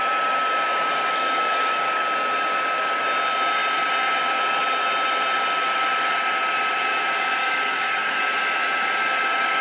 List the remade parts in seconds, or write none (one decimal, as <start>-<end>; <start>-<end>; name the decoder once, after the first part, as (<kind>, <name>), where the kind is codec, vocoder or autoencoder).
0.7-2.0 (codec, DAC); 7.4-8.2